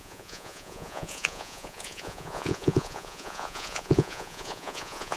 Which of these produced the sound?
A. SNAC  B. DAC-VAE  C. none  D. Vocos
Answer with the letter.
D